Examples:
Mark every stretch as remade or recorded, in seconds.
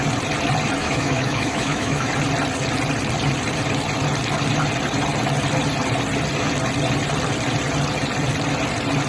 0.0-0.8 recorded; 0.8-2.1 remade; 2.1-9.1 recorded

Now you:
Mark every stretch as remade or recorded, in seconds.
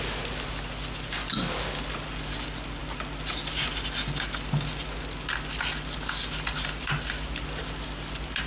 0.0-8.5 recorded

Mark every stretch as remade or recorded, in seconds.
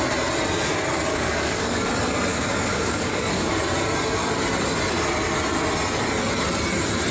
0.0-1.1 recorded; 1.1-1.9 remade; 1.9-2.3 recorded; 2.3-3.5 remade; 3.5-7.1 recorded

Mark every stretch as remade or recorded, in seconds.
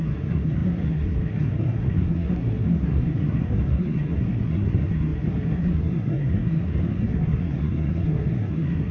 0.0-8.9 remade